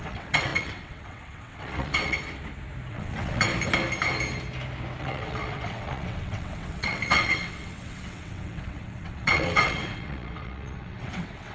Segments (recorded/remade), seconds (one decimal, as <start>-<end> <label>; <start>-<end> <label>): 0.0-2.2 remade; 2.2-2.9 recorded; 2.9-3.5 remade; 3.5-5.0 recorded; 5.0-11.5 remade